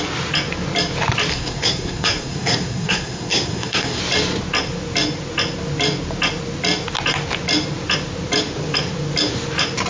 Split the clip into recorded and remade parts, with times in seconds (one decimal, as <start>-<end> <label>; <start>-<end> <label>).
0.0-1.3 recorded; 1.3-4.0 remade; 4.0-9.9 recorded